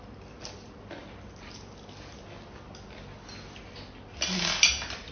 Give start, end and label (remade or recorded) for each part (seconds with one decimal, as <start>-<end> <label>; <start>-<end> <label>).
0.0-5.1 recorded